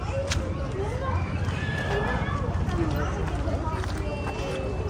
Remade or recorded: recorded